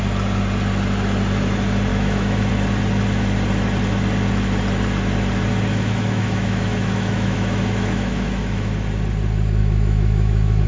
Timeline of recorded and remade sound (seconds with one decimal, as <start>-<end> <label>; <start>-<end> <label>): 0.0-1.9 recorded; 1.9-2.5 remade; 2.5-5.7 recorded; 5.7-8.7 remade; 8.7-9.6 recorded; 9.6-10.7 remade